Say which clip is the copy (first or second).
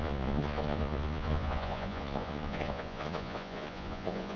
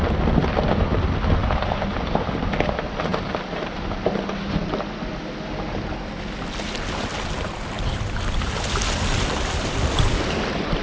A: first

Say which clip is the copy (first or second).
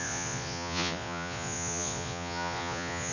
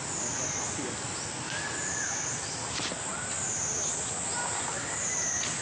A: first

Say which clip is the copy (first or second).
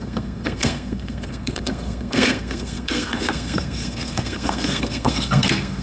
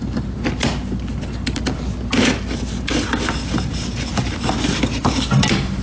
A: first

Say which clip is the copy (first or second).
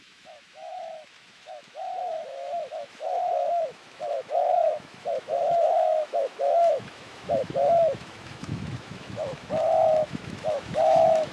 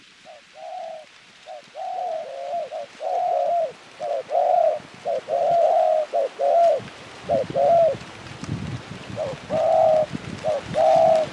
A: first